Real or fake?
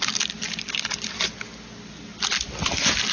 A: real